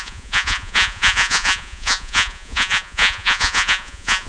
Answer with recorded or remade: remade